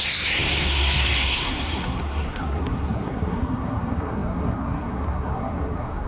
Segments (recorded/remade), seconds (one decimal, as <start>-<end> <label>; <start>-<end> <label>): 0.0-6.1 remade

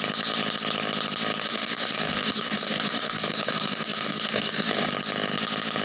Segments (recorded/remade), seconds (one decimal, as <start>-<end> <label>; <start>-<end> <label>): 0.0-1.4 recorded; 1.4-4.9 remade; 4.9-5.8 recorded

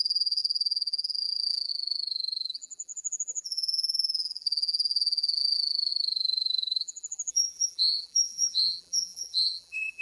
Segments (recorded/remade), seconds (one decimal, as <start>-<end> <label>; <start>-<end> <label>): 0.0-10.0 remade